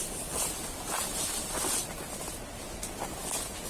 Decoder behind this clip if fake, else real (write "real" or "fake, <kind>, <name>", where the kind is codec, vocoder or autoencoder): real